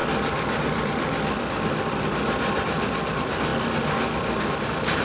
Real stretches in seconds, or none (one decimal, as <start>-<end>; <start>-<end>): 0.0-5.0